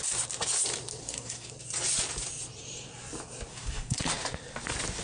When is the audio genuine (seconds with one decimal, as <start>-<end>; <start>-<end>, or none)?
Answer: 0.0-1.0; 1.5-3.5; 4.0-5.0